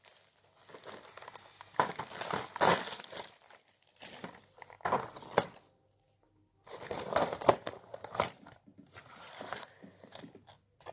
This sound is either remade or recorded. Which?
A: recorded